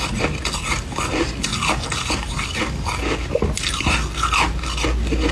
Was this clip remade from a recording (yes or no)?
no